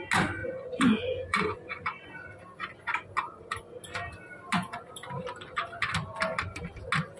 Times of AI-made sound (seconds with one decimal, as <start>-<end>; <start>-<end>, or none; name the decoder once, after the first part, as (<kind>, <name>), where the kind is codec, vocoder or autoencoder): 0.4-2.1 (vocoder, Vocos)